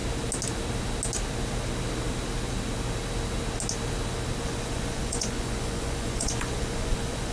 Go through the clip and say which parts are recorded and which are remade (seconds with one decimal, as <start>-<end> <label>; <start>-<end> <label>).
0.0-4.4 recorded; 4.4-7.3 remade